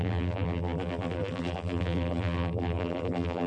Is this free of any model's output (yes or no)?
no